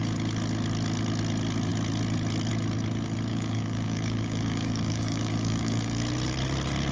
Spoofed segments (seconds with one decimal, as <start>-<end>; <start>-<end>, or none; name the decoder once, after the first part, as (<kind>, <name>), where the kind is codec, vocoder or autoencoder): 3.3-6.0 (codec, DAC)